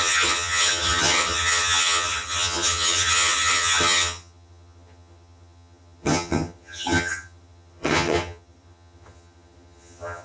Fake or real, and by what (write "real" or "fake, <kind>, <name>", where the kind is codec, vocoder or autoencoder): fake, vocoder, HiFi-GAN